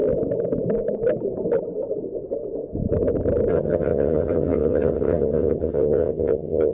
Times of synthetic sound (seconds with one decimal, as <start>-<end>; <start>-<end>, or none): 3.5-6.7